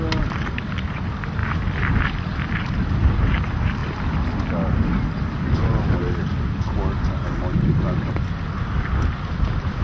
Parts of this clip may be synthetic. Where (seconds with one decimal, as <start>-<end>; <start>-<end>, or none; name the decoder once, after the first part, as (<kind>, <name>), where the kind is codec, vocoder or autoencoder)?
1.4-2.0 (vocoder, BigVGAN v2)